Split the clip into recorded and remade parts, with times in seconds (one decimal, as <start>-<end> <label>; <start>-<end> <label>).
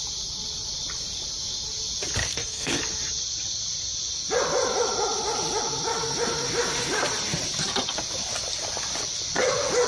0.0-2.2 recorded; 2.2-2.8 remade; 2.8-9.9 recorded